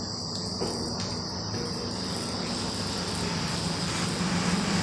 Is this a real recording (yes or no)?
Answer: yes